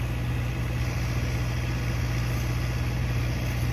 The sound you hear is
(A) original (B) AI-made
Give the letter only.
A